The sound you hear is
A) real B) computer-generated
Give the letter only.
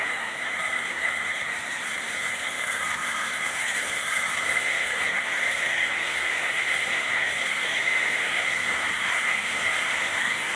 B